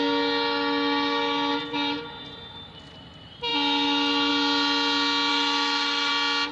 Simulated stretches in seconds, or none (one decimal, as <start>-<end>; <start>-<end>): 5.3-6.1